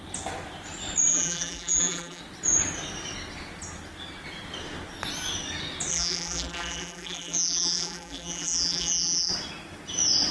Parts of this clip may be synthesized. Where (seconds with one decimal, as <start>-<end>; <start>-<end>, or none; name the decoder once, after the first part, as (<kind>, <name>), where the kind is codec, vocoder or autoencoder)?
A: 1.1-2.2 (vocoder, BigVGAN v2); 5.9-9.3